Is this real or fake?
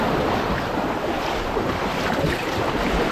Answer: fake